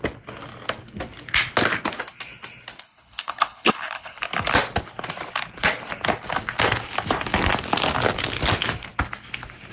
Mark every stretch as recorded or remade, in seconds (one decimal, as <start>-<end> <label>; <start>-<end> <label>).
0.0-2.8 recorded; 2.8-4.2 remade; 4.2-9.7 recorded